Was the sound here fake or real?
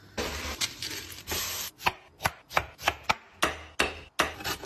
real